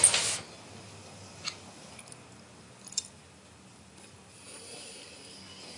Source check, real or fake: real